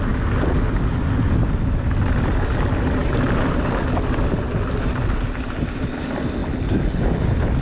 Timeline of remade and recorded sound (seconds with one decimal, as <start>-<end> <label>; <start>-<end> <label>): 0.0-7.6 recorded